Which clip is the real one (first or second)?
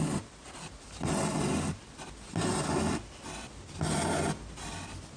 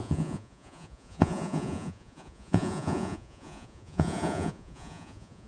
first